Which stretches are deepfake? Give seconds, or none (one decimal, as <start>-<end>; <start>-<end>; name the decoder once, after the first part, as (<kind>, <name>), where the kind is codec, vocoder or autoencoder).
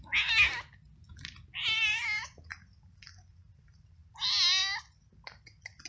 none